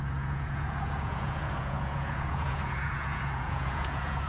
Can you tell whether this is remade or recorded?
remade